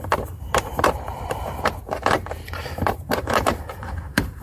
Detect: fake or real fake